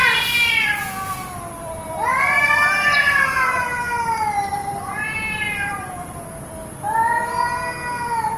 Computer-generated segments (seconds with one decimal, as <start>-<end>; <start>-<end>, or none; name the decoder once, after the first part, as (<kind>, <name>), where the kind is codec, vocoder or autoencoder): 0.0-3.8 (vocoder, BigVGAN v2); 4.6-7.4